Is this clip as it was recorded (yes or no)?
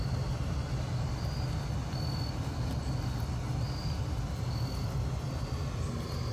yes